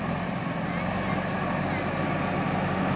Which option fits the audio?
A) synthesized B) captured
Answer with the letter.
B